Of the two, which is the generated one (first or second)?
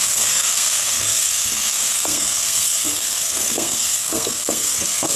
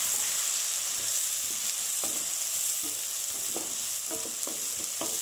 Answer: first